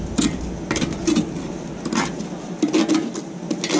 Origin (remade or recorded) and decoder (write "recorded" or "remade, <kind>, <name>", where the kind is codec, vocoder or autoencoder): recorded